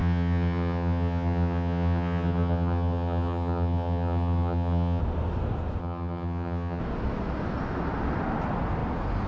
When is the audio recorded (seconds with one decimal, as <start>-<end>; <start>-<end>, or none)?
5.0-5.8; 6.8-9.3